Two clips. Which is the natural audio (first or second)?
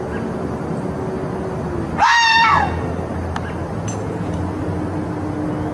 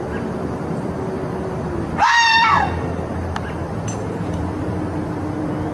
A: first